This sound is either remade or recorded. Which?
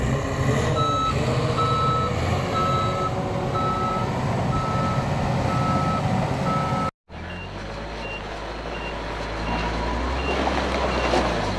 recorded